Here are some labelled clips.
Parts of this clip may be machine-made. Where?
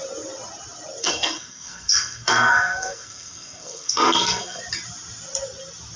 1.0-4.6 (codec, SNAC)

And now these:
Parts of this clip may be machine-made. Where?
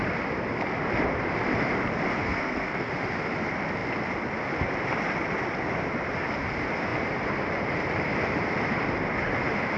2.2-2.9 (codec, SNAC)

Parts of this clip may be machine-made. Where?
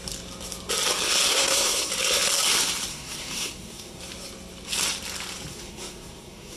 1.3-1.9 (codec, SNAC); 2.9-4.0; 5.5-6.6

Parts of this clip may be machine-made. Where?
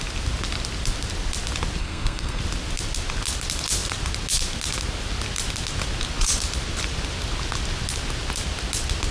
1.8-2.4 (codec, SNAC)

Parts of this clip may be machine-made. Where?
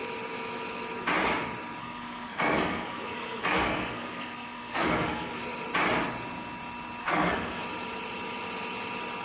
1.8-5.4 (codec, SNAC); 7.0-7.6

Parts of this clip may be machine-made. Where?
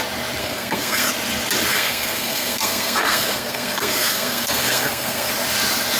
0.4-1.1 (codec, SNAC); 1.7-5.3